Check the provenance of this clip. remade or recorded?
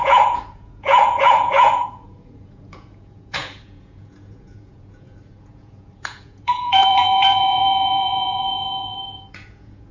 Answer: remade